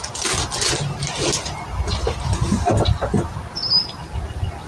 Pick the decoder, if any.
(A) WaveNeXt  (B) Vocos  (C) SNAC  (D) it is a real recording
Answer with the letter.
D